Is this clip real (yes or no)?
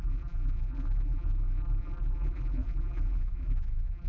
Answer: no